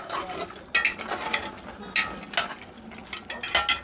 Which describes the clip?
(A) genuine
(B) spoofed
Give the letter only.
A